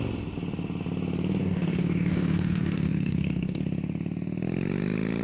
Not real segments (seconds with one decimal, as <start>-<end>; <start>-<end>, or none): 1.4-3.6